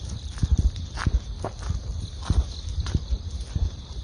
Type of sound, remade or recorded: recorded